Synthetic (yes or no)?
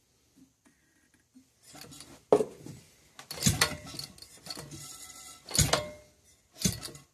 no